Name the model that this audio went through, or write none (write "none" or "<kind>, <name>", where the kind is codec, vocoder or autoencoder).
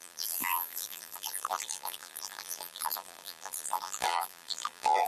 vocoder, BigVGAN v2